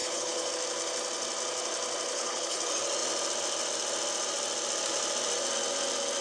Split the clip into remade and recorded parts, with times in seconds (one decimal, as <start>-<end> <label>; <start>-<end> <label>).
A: 0.0-0.5 remade; 0.5-2.1 recorded; 2.1-2.6 remade; 2.6-6.2 recorded